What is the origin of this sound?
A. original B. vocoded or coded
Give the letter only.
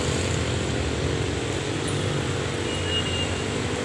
A